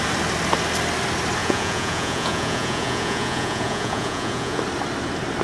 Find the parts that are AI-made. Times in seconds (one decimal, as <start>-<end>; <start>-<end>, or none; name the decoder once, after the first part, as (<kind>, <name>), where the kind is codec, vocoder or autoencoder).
1.4-4.6 (vocoder, Vocos)